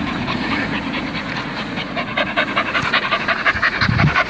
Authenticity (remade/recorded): remade